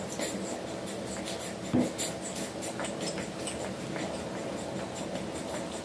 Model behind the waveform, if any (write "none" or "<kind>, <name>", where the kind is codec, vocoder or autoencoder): none